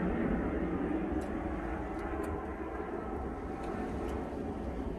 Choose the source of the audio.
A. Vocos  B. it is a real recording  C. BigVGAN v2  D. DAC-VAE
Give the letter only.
B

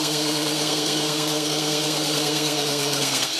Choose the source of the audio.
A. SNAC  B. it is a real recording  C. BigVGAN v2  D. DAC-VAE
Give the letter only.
A